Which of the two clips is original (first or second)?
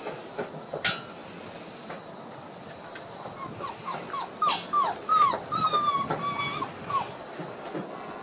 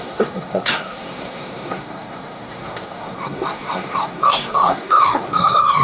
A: first